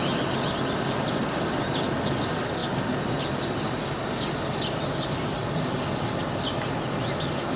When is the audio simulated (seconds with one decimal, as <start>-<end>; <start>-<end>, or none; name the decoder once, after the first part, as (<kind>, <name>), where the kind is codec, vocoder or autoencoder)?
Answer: none